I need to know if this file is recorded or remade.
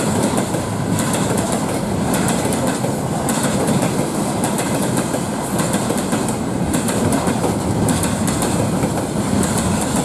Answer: remade